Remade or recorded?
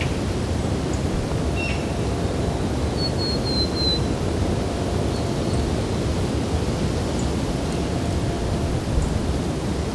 recorded